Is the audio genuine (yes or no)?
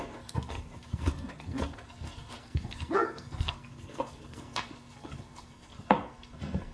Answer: no